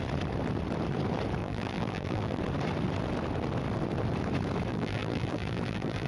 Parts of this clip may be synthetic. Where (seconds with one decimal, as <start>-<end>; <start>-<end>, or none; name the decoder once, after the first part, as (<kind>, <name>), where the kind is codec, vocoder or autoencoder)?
1.4-2.4 (vocoder, BigVGAN v2); 4.7-6.1